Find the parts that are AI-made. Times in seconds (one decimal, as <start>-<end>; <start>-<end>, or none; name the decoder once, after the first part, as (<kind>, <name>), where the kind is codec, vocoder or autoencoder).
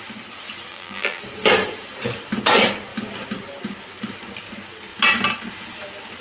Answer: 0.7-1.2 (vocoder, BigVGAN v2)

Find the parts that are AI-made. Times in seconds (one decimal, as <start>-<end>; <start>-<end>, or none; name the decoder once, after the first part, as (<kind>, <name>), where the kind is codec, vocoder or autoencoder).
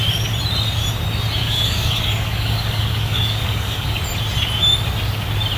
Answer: 1.4-4.0 (codec, DAC)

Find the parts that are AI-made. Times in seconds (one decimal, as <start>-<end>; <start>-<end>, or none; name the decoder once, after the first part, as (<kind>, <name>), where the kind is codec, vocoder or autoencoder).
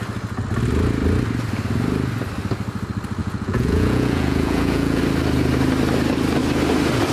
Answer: 3.2-5.0 (vocoder, Vocos)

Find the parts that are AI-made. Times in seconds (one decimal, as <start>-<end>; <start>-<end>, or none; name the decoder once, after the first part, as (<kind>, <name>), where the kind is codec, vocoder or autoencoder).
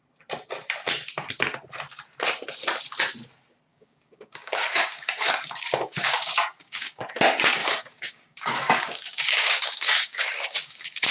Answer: 3.7-7.1 (codec, DAC); 7.6-11.1